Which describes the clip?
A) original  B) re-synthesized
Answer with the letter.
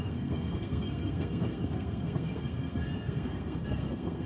B